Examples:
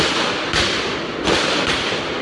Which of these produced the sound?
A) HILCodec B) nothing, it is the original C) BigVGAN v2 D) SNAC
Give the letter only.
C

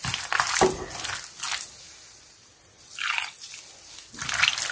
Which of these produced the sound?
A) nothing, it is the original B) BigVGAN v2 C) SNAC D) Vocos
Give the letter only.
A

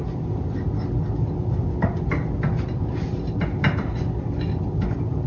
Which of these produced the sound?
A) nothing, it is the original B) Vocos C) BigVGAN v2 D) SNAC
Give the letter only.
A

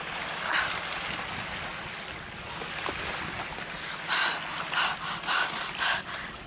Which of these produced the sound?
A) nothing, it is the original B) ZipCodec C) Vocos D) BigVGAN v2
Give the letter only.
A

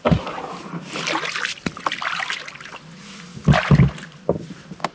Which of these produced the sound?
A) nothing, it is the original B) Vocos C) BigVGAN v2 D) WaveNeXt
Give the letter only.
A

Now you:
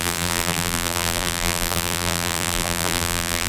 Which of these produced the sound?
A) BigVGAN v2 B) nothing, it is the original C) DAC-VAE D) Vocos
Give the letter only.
A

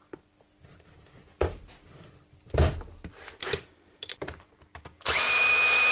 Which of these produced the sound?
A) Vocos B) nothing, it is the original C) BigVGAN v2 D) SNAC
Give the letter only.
C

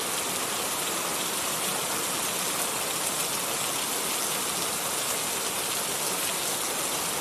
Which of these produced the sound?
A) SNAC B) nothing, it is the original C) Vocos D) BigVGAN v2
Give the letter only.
B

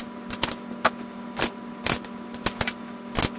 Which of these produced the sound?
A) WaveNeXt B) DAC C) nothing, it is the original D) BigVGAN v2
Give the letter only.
C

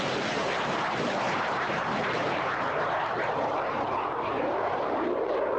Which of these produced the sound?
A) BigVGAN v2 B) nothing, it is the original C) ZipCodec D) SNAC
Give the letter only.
A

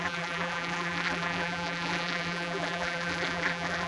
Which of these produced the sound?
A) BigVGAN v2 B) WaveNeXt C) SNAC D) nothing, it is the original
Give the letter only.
A